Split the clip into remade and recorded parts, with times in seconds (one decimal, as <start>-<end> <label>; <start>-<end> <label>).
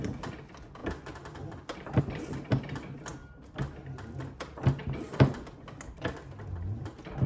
0.0-7.3 recorded